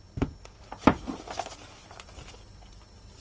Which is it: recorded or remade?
recorded